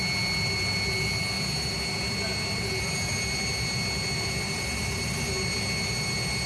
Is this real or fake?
real